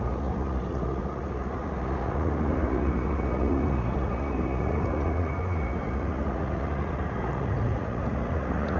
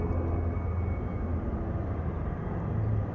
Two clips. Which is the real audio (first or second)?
second